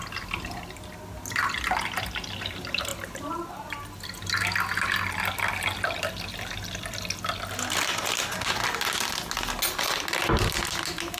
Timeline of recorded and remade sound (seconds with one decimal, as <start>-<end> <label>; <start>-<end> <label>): 0.0-11.2 recorded